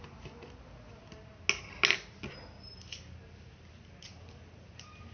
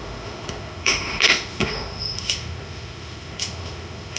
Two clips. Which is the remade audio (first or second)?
second